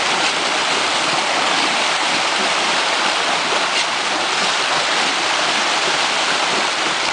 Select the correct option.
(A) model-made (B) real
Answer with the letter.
B